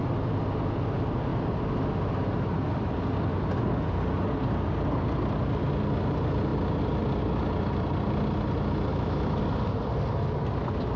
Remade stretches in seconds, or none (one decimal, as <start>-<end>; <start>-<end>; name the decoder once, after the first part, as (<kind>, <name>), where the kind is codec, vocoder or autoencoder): 8.9-9.4 (autoencoder, DAC-VAE)